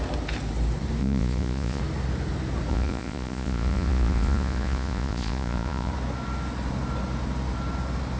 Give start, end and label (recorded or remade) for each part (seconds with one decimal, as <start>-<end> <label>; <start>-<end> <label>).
0.0-1.0 recorded; 1.0-1.8 remade; 1.8-2.7 recorded; 2.7-5.9 remade; 5.9-8.2 recorded